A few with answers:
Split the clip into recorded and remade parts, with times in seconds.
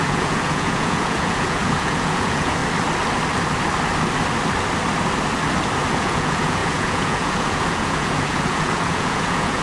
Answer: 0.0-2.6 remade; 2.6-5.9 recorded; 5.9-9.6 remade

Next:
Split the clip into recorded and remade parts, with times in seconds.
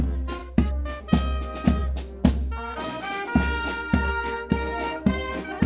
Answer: 0.0-0.4 recorded; 0.4-1.0 remade; 1.0-4.1 recorded; 4.1-5.3 remade; 5.3-5.7 recorded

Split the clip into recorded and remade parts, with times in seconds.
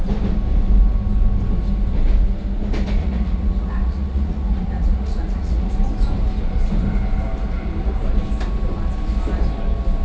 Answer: 0.0-3.0 recorded; 3.0-5.7 remade; 5.7-10.0 recorded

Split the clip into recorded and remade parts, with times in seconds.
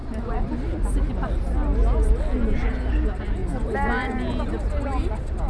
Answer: 0.0-3.4 recorded; 3.4-4.4 remade; 4.4-5.5 recorded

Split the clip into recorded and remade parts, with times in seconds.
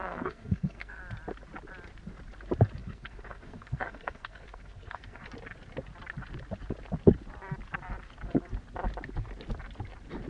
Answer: 0.0-1.0 remade; 1.0-2.8 recorded; 2.8-5.2 remade; 5.2-10.3 recorded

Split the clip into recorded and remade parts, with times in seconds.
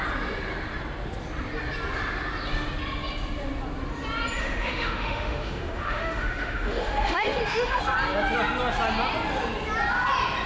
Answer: 0.0-4.4 recorded; 4.4-7.8 remade; 7.8-10.5 recorded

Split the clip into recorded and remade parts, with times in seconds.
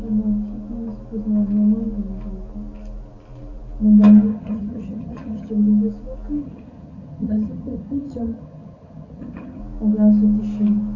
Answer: 0.0-4.3 recorded; 4.3-5.5 remade; 5.5-6.4 recorded; 6.4-9.6 remade; 9.6-11.0 recorded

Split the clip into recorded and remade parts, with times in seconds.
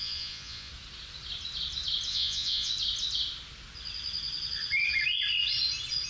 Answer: 0.0-0.7 remade; 0.7-2.1 recorded; 2.1-2.7 remade; 2.7-6.1 recorded